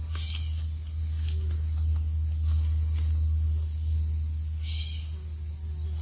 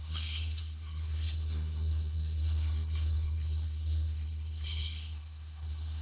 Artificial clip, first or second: second